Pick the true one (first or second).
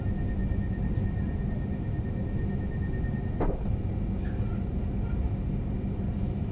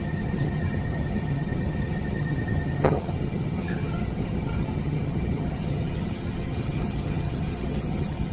first